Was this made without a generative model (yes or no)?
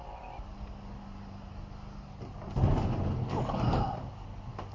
yes